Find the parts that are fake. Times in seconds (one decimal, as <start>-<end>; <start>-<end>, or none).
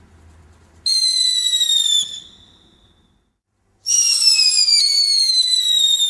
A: 1.1-4.8